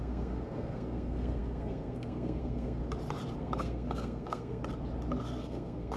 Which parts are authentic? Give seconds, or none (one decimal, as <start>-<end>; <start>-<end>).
2.8-3.4; 4.6-5.2